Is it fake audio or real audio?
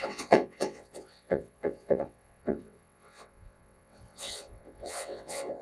fake